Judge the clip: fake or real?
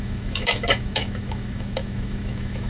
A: fake